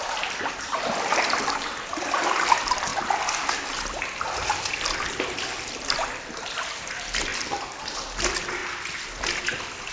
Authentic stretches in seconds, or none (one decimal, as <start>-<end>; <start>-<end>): 7.3-7.8; 8.6-9.1